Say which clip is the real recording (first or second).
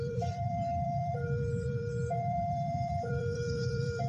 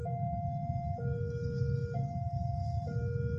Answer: second